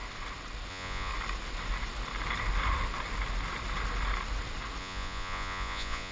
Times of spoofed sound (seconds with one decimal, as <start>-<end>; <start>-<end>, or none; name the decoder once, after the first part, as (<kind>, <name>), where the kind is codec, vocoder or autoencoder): 0.7-1.1 (vocoder, Vocos); 4.8-6.1